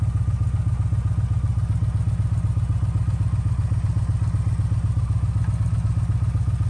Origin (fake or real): real